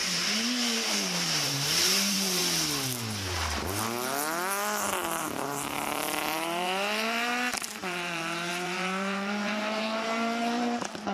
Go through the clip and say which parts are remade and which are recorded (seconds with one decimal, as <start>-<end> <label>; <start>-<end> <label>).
0.0-2.4 remade; 2.4-5.2 recorded; 5.2-11.1 remade